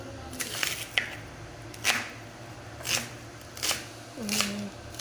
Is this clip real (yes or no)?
yes